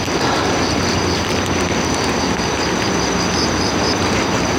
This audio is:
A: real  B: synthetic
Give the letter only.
B